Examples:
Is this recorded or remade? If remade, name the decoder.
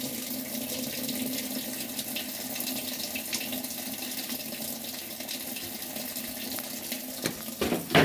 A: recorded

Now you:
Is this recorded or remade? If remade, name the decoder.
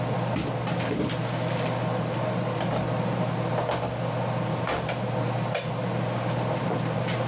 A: recorded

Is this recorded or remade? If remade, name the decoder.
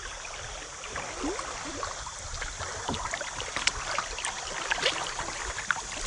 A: recorded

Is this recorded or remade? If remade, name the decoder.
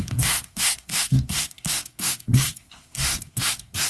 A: remade, codec, SNAC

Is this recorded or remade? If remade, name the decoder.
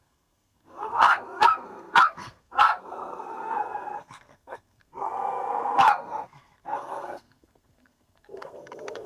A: remade, codec, SNAC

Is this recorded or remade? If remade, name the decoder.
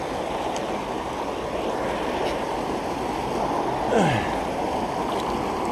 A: recorded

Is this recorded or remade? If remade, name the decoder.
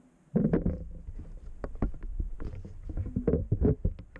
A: recorded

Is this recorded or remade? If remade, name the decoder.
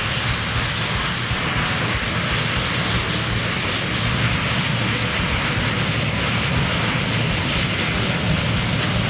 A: recorded